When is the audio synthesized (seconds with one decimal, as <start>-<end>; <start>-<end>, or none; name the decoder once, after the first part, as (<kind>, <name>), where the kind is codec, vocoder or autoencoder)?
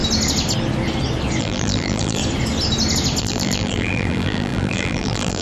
1.4-2.2 (vocoder, BigVGAN v2); 3.2-5.4